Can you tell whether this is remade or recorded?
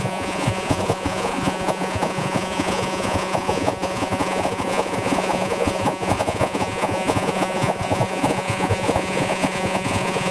remade